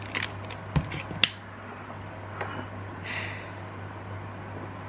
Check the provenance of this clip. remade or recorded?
recorded